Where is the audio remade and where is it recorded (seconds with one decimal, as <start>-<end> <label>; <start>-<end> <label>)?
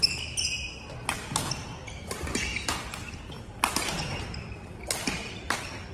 0.0-5.9 recorded